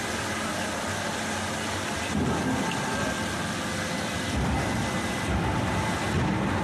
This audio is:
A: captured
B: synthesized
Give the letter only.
A